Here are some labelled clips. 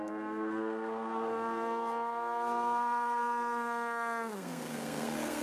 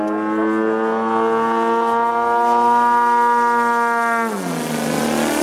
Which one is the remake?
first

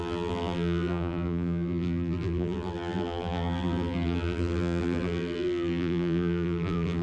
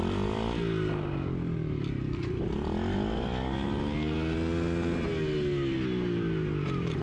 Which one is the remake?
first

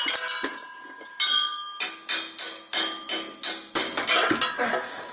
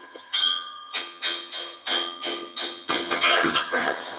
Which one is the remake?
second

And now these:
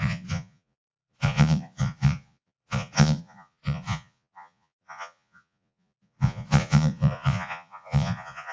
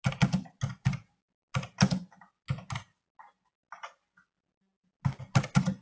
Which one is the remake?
first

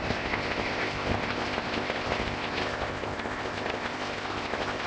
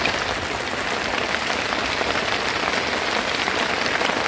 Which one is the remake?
first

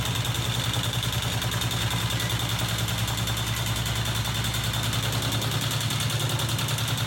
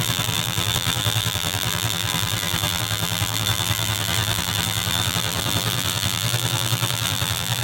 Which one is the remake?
second